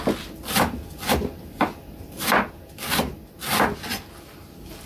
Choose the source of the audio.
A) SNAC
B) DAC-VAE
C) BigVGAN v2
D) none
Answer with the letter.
D